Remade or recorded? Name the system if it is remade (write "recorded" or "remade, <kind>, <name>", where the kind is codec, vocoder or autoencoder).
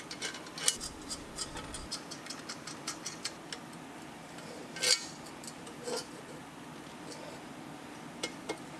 recorded